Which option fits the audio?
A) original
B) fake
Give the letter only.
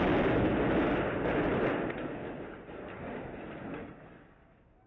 A